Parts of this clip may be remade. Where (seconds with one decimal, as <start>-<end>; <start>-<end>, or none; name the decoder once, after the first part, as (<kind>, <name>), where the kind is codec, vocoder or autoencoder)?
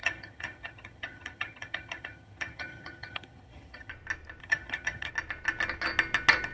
0.0-3.9 (vocoder, HiFi-GAN); 4.4-5.1